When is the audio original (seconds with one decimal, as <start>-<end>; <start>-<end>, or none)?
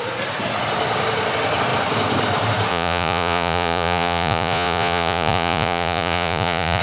0.0-2.7